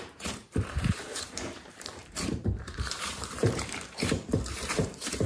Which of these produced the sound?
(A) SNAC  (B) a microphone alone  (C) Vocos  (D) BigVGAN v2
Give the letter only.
D